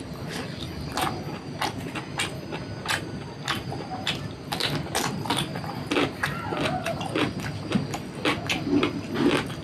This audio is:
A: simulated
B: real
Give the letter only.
B